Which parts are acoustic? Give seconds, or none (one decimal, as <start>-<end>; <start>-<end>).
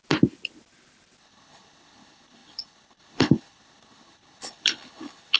0.0-1.2